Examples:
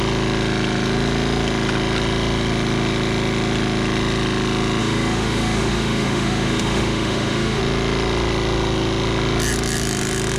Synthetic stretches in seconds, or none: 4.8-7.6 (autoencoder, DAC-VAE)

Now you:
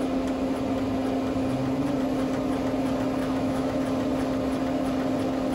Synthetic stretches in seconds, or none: 3.2-3.8 (autoencoder, DAC-VAE)

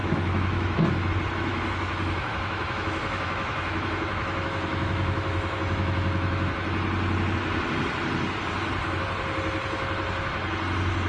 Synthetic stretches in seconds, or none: 0.0-1.1 (autoencoder, DAC-VAE); 1.5-6.5

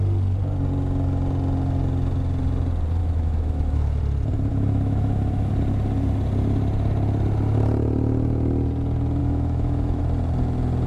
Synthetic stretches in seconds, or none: 3.0-4.0 (autoencoder, DAC-VAE); 4.5-5.5; 9.2-10.0